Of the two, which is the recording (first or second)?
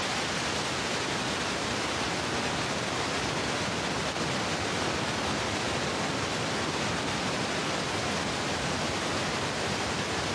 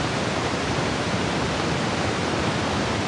first